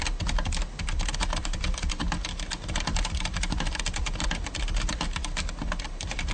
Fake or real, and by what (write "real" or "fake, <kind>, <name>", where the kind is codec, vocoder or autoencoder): real